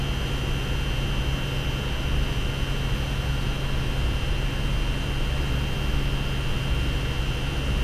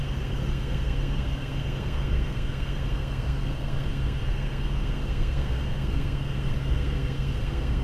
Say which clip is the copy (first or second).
second